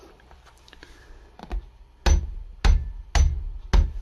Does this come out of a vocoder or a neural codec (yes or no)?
no